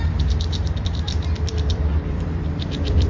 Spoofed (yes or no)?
yes